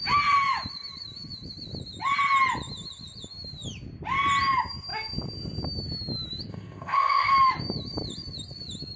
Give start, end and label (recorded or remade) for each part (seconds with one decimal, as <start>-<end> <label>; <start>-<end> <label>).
0.0-6.5 recorded; 6.5-7.3 remade; 7.3-9.0 recorded